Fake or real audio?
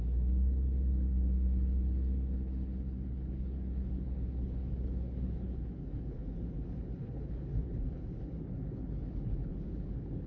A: fake